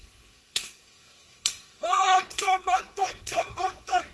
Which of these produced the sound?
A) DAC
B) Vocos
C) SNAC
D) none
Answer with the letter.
C